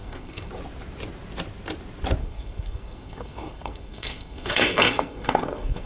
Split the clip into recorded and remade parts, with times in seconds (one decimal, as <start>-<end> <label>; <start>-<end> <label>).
0.0-0.5 remade; 0.5-2.2 recorded; 2.2-5.9 remade